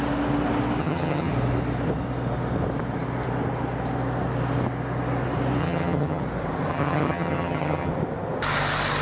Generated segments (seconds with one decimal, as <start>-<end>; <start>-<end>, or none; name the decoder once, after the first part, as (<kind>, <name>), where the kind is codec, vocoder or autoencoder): 0.8-1.3 (vocoder, HiFi-GAN); 5.6-6.2; 6.7-7.9